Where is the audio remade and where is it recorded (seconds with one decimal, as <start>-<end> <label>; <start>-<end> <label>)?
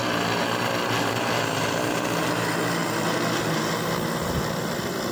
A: 0.0-5.1 recorded